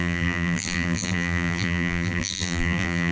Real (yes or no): no